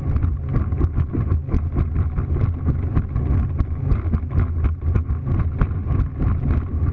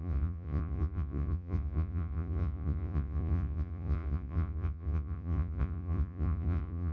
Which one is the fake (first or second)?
second